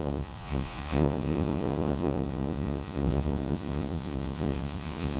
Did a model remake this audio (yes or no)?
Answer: yes